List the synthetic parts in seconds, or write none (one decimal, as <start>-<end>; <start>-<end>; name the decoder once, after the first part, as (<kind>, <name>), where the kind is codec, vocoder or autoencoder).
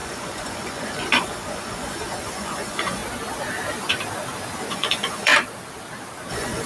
0.0-3.0 (vocoder, Vocos); 4.7-5.3; 6.3-6.7